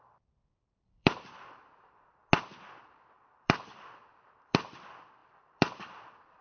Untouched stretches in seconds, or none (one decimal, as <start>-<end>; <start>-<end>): 2.2-2.8